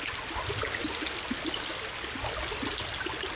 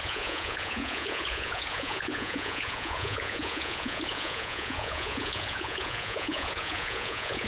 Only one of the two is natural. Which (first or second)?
first